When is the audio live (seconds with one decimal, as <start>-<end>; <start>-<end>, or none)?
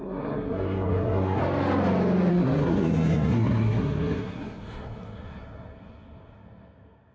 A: 1.4-2.3